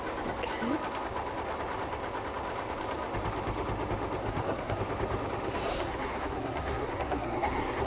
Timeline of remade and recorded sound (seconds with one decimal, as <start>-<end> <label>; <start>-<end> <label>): 0.0-4.2 recorded; 4.2-4.8 remade; 4.8-5.7 recorded; 5.7-7.9 remade